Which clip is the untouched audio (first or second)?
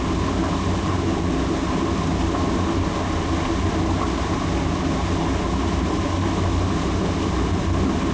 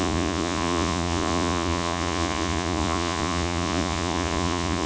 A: first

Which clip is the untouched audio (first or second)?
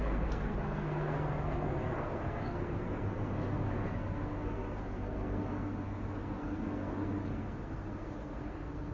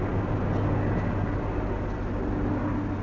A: second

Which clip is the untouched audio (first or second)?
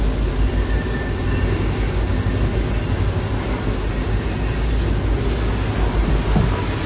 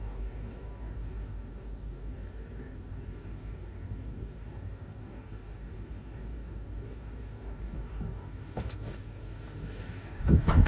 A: first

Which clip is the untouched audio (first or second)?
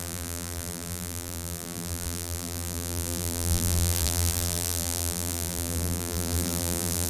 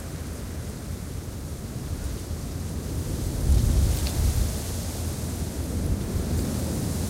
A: second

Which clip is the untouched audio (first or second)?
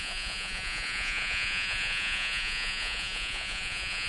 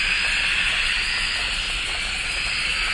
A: second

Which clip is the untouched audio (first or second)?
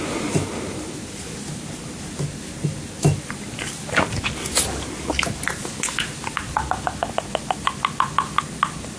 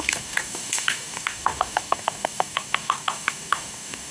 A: first